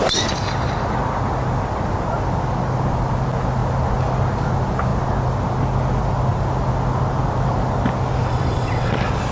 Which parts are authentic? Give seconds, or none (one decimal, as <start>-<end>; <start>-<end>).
0.0-8.3; 8.9-9.3